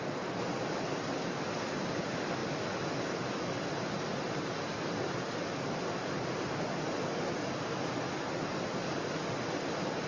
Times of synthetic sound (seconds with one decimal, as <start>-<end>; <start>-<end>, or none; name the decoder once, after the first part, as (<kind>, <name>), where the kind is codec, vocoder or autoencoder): 2.4-2.9 (vocoder, BigVGAN v2)